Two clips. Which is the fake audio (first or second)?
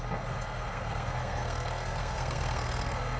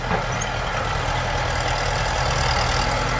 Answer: first